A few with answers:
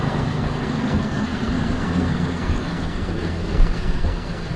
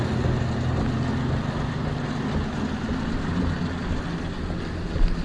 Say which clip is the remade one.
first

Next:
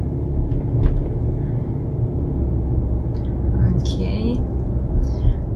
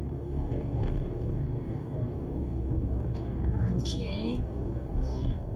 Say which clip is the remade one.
second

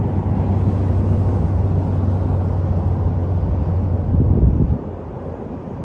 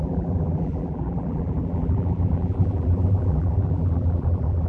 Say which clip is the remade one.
second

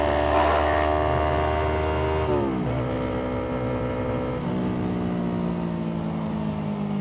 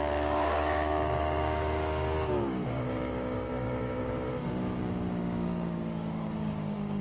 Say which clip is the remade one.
second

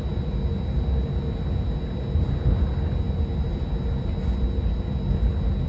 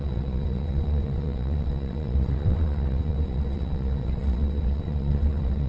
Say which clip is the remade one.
second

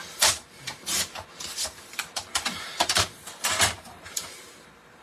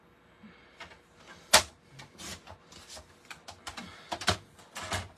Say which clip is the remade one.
first